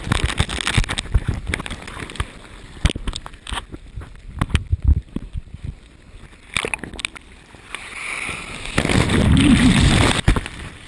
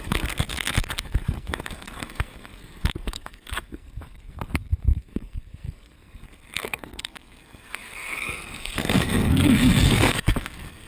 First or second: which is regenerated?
second